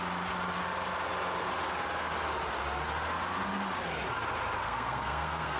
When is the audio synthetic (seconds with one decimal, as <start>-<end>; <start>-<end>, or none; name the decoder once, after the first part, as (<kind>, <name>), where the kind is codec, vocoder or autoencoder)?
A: 4.6-5.6 (codec, SNAC)